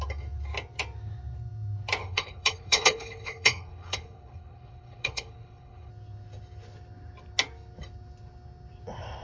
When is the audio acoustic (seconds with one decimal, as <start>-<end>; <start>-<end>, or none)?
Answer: 0.0-2.0; 5.9-9.2